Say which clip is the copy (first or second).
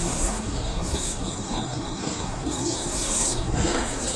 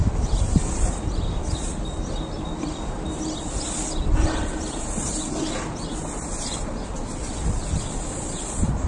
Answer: first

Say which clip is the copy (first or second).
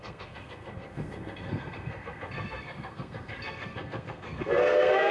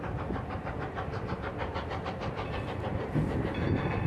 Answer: first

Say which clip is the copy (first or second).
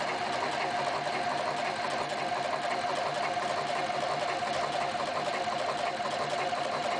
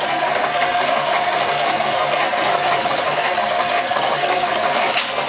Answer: second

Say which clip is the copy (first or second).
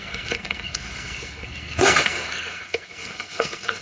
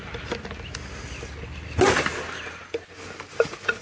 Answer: first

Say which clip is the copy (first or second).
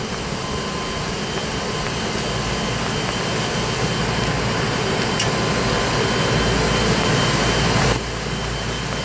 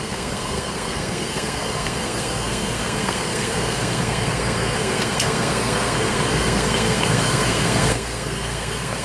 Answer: second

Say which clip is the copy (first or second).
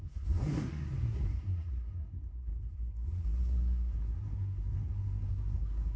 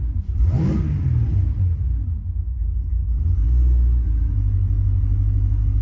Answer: first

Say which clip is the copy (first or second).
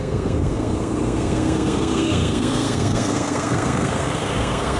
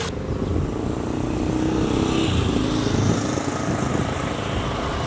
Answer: first